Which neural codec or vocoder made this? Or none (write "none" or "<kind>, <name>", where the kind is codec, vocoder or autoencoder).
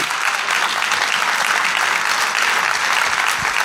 none